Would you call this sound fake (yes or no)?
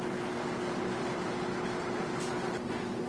no